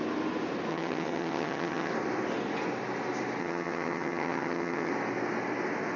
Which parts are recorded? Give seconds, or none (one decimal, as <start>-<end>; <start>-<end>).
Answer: 0.0-0.7; 1.9-3.4; 4.9-6.0